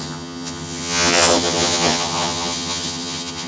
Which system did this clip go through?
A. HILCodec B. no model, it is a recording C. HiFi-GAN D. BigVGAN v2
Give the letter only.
C